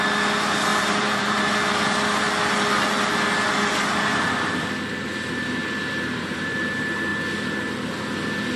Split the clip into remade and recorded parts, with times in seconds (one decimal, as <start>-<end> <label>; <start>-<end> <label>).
0.0-0.7 recorded; 0.7-1.4 remade; 1.4-8.6 recorded